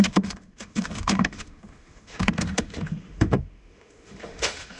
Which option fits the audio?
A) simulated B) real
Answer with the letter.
A